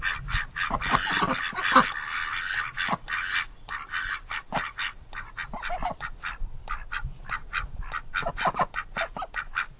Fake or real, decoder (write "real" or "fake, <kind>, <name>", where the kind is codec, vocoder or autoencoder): real